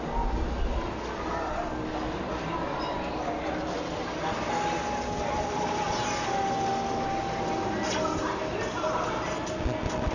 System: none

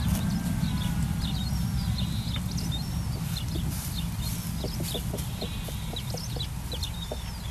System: none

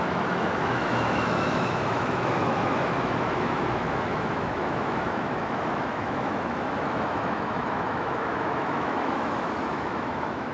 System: autoencoder, DAC-VAE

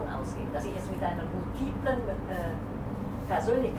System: none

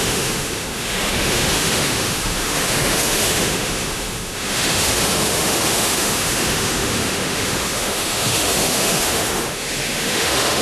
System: autoencoder, DAC-VAE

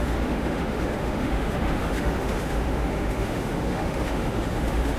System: autoencoder, DAC-VAE